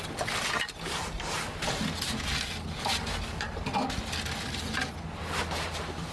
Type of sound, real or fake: real